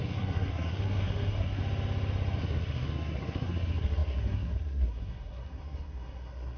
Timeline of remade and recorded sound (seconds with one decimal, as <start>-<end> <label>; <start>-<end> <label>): 0.0-1.6 remade; 1.6-2.4 recorded; 2.4-6.6 remade